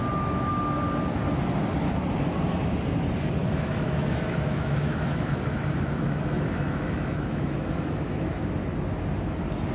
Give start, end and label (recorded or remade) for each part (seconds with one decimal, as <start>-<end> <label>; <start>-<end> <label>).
0.0-3.4 recorded; 3.4-8.4 remade; 8.4-9.7 recorded